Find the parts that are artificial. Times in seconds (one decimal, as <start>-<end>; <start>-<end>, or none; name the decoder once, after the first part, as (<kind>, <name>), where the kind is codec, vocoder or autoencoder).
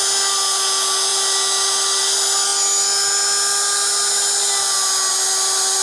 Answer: none